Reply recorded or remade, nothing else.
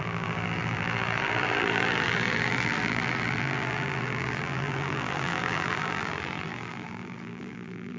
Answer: remade